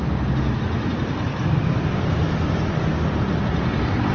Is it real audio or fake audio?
real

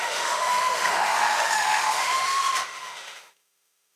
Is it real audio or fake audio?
fake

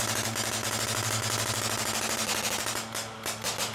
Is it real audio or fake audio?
real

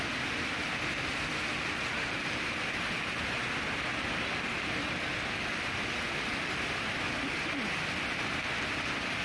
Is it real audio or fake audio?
real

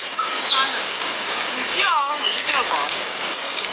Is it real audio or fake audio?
fake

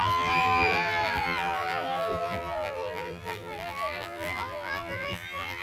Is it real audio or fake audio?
fake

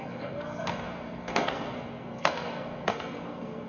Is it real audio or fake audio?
fake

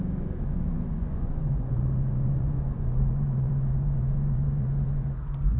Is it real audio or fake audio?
fake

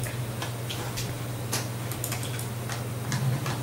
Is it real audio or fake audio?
real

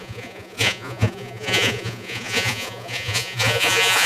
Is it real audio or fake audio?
fake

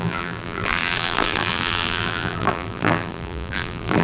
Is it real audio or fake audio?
fake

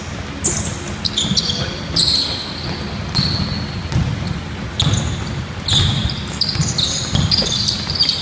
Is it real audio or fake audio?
real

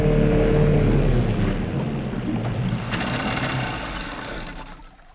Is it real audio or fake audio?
real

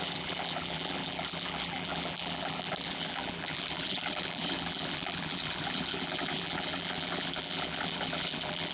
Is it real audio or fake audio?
fake